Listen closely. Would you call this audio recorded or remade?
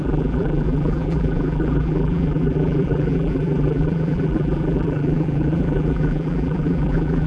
remade